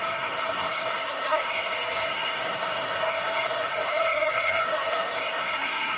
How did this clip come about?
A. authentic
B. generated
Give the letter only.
B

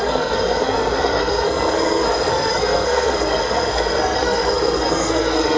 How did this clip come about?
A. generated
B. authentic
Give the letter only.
A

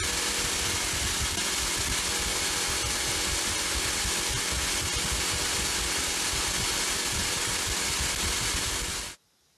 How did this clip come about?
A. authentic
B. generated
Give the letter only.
A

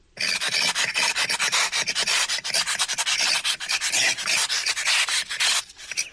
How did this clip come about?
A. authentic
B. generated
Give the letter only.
A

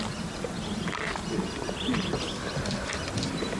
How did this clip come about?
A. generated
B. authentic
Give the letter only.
B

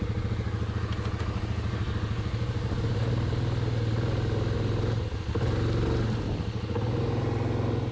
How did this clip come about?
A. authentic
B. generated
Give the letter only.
A